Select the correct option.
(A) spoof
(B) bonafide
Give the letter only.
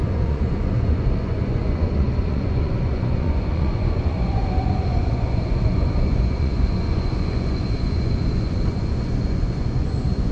A